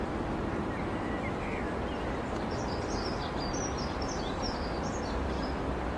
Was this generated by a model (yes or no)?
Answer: yes